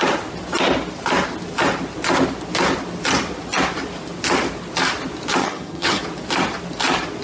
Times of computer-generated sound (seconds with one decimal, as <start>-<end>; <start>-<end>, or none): 5.4-6.0